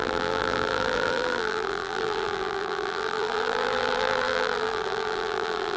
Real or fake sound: fake